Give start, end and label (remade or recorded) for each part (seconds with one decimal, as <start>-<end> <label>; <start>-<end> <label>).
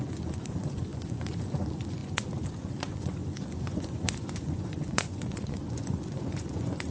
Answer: 0.0-6.9 remade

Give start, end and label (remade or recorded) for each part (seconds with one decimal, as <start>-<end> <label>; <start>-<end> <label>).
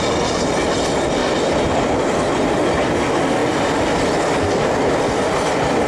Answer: 0.0-5.9 recorded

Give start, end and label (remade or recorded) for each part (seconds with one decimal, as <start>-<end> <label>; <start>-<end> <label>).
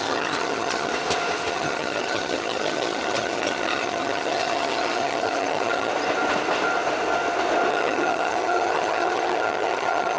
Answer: 0.0-0.9 remade; 0.9-1.5 recorded; 1.5-5.9 remade; 5.9-7.7 recorded; 7.7-10.2 remade